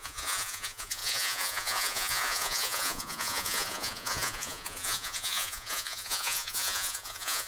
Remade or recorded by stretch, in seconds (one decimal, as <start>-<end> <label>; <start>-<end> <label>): 0.0-7.5 remade